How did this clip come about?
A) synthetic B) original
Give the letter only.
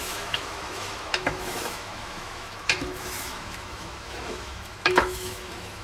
A